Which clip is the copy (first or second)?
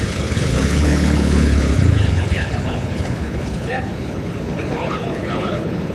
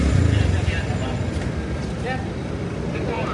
first